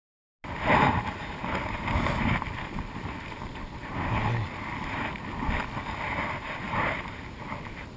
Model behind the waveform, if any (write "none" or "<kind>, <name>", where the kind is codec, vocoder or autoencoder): none